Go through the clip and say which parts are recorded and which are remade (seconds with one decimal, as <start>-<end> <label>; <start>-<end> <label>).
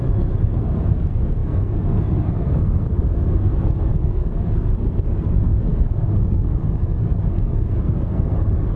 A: 0.0-8.8 remade